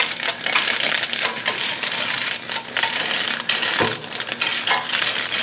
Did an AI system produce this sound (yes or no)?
no